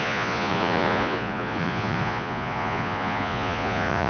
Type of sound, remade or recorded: remade